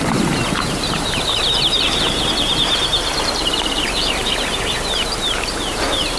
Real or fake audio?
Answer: fake